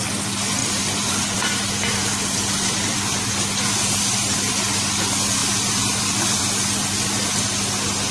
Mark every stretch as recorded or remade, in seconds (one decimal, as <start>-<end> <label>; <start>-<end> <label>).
0.0-0.6 recorded; 0.6-4.0 remade; 4.0-5.4 recorded; 5.4-6.4 remade; 6.4-8.1 recorded